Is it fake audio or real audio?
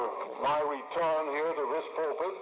real